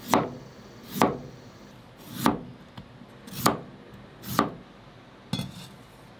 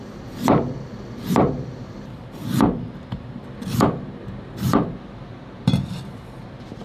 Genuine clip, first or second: first